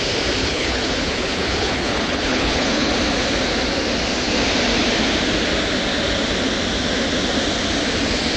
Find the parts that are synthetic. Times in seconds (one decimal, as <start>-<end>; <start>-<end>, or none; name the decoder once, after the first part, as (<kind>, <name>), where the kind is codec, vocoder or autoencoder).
0.4-2.9 (codec, HILCodec)